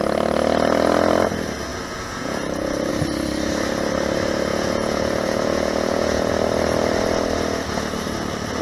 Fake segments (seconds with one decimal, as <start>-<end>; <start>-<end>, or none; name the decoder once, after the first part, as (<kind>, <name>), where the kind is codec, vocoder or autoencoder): 1.7-2.9 (vocoder, Vocos); 4.5-6.3